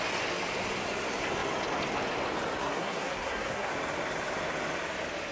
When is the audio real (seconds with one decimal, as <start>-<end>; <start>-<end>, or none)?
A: 0.0-2.6; 3.7-5.3